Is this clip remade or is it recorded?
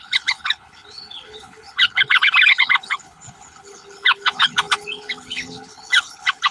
remade